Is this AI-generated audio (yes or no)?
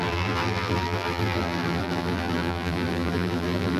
yes